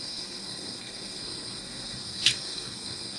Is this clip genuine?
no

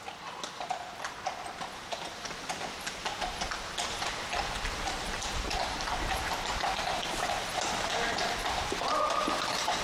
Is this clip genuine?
yes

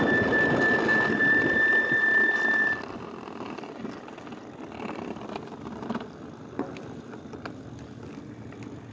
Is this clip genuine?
yes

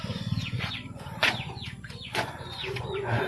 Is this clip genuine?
no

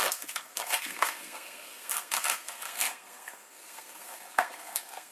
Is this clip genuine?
no